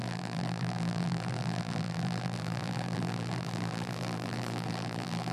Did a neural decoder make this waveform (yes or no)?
yes